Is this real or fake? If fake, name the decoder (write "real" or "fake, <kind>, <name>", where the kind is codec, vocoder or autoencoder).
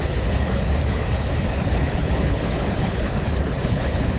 fake, codec, HILCodec